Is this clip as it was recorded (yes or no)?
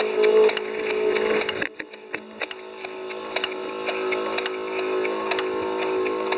yes